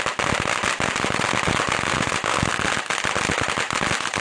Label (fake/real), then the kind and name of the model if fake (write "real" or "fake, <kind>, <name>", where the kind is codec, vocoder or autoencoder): real